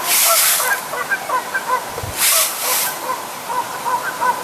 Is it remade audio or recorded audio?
remade